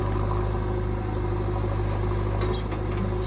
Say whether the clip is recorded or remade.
recorded